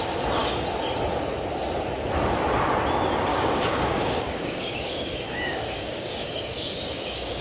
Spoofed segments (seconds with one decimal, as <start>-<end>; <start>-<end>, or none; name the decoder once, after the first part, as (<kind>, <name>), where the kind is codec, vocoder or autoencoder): 3.3-7.4 (codec, DAC)